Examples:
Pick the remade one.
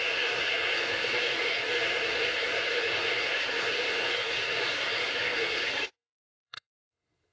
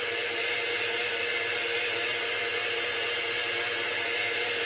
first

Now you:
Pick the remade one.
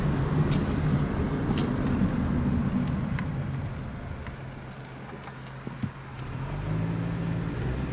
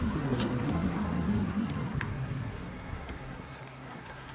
second